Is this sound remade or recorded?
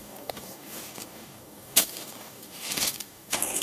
remade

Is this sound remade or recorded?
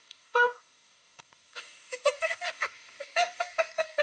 remade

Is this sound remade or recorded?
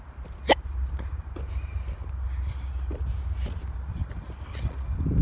recorded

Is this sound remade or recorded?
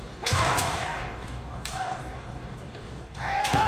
remade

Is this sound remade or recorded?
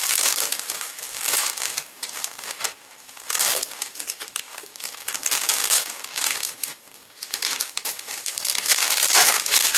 remade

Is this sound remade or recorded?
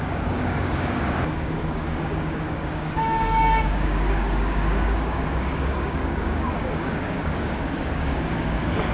remade